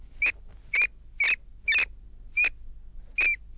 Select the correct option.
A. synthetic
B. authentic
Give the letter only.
B